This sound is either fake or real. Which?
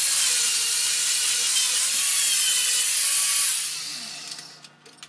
real